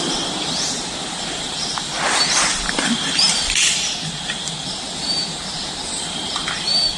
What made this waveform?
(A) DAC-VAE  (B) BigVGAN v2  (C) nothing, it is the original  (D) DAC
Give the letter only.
B